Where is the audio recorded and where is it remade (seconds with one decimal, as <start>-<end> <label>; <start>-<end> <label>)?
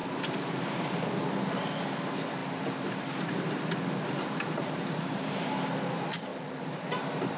0.0-0.6 remade; 0.6-6.3 recorded; 6.3-7.4 remade